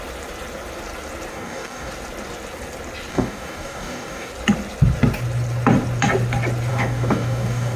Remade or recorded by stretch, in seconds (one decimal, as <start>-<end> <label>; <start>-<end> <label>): 0.0-1.3 recorded; 1.3-1.9 remade; 1.9-3.1 recorded; 3.1-4.3 remade; 4.3-6.7 recorded; 6.7-7.8 remade